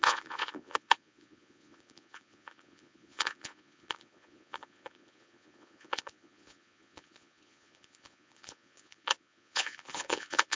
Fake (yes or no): yes